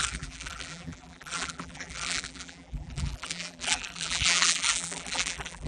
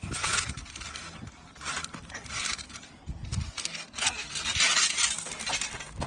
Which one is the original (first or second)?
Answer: second